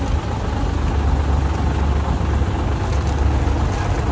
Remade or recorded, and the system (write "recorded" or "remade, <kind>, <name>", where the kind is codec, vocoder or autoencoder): recorded